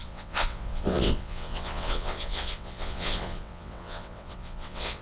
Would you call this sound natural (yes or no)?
no